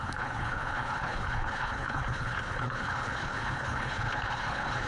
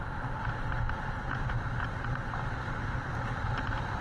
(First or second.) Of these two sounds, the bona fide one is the second